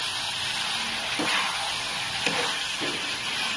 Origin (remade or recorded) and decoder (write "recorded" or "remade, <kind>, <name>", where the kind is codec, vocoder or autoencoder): recorded